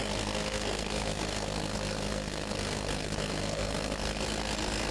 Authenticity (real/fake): fake